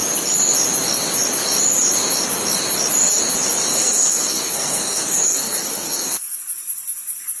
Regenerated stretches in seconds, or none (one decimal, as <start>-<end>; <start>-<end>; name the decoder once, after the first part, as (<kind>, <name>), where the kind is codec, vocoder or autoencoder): 3.7-6.4 (codec, SNAC)